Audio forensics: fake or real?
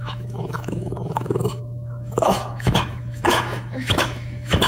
fake